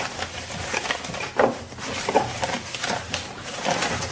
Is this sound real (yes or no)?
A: yes